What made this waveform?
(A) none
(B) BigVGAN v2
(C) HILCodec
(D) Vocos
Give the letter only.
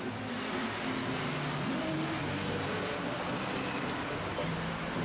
A